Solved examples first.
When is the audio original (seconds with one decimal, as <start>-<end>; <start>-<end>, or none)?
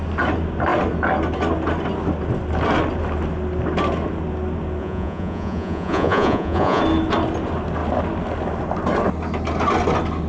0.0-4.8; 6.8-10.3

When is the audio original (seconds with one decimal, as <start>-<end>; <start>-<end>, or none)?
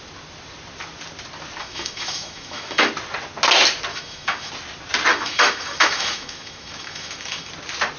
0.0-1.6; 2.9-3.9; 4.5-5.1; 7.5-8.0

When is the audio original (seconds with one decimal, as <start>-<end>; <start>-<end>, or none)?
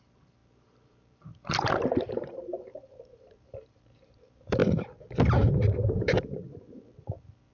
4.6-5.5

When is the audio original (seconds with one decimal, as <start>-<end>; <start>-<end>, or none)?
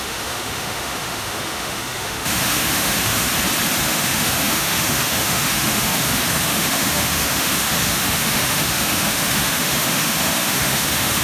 3.3-3.8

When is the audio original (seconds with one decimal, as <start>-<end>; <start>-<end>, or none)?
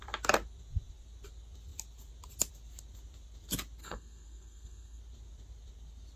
0.0-3.8; 5.0-6.2